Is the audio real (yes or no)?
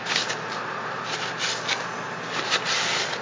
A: yes